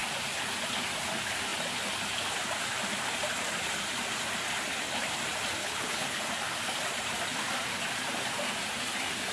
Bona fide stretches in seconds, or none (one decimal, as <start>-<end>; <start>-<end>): 0.0-5.6; 6.2-9.3